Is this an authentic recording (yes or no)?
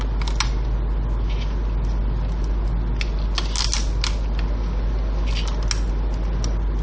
yes